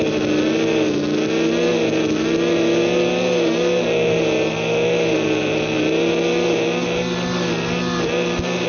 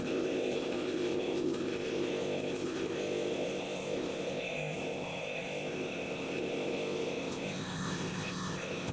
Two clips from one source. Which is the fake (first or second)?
second